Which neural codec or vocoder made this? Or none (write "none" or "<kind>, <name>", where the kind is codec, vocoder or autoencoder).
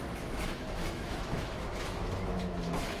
autoencoder, DAC-VAE